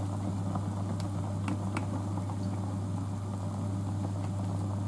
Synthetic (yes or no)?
no